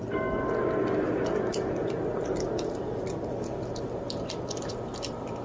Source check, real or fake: real